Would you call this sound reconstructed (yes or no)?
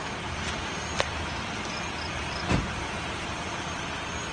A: no